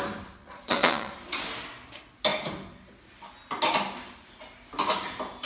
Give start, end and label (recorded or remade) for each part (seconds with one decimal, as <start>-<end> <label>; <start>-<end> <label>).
0.0-0.4 recorded; 0.4-1.1 remade; 1.1-5.5 recorded